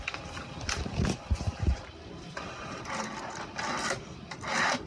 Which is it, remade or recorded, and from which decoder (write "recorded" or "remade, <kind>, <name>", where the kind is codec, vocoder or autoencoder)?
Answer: recorded